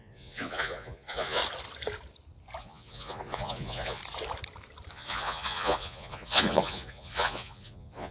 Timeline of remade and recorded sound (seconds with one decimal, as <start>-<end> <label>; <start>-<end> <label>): 0.0-1.4 remade; 1.4-2.6 recorded; 2.6-4.0 remade; 4.0-4.9 recorded; 4.9-8.1 remade